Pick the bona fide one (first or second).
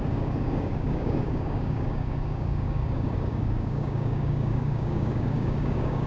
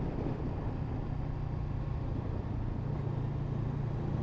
second